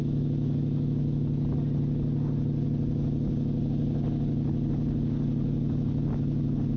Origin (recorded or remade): recorded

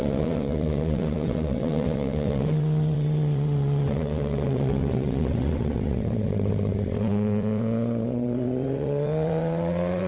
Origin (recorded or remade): remade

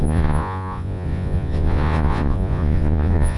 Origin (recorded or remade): remade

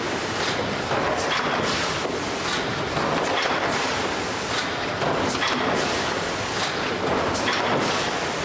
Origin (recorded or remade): recorded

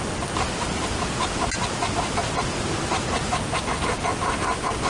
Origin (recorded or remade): recorded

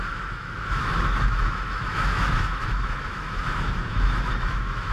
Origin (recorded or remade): remade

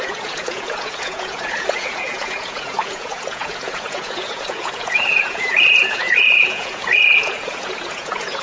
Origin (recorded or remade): remade